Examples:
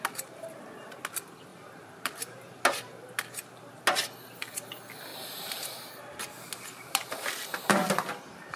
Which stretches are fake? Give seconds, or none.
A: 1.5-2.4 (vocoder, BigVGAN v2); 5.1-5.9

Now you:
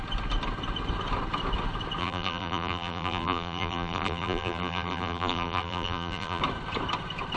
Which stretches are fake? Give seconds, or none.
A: 2.0-6.4 (vocoder, BigVGAN v2)

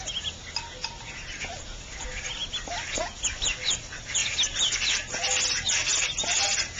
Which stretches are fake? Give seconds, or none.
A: 5.9-6.8 (vocoder, BigVGAN v2)

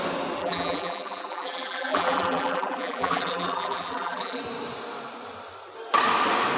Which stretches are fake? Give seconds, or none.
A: 0.4-4.4 (vocoder, BigVGAN v2)

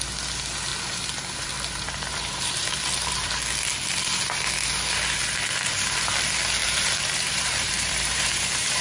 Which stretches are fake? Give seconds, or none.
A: 0.7-3.3 (vocoder, BigVGAN v2); 6.6-8.8